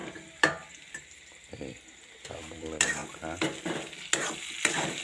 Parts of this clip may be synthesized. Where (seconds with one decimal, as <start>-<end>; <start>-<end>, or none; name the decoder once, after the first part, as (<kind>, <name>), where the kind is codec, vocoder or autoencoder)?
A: 0.0-3.0 (vocoder, BigVGAN v2); 4.3-5.0